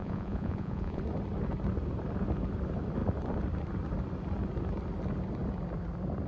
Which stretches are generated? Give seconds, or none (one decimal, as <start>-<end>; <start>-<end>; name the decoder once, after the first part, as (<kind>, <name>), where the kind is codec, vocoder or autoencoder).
0.0-1.0 (vocoder, Vocos)